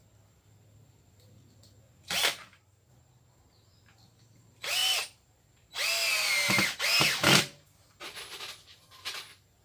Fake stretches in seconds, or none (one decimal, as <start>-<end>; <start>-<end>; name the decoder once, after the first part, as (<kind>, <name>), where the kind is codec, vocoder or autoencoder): 2.3-2.9 (vocoder, BigVGAN v2); 4.8-5.4; 6.9-8.0

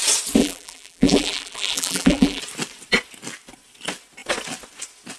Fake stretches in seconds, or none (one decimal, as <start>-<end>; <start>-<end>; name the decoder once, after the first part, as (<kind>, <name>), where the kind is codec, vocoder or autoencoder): 0.4-2.4 (vocoder, BigVGAN v2)

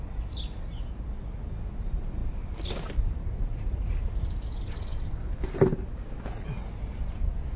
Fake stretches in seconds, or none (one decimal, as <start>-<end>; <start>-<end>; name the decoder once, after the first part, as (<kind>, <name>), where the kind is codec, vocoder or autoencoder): none

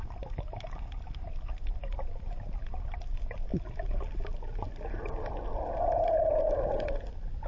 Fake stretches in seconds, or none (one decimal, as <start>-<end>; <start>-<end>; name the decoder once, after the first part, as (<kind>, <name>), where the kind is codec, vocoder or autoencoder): none